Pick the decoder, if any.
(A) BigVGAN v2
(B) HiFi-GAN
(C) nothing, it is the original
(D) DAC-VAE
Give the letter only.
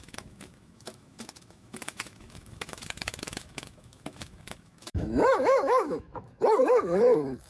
D